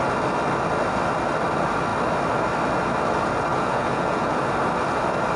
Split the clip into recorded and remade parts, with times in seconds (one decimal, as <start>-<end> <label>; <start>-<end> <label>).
0.0-3.5 recorded; 3.5-4.4 remade; 4.4-5.4 recorded